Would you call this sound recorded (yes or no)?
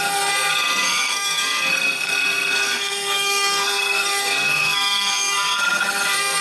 no